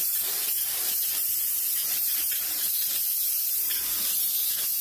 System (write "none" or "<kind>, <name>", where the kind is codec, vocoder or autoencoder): vocoder, BigVGAN v2